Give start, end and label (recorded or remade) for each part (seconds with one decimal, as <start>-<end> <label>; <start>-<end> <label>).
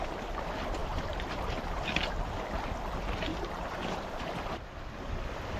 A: 0.0-0.8 recorded; 0.8-1.9 remade; 1.9-3.3 recorded; 3.3-4.6 remade; 4.6-5.6 recorded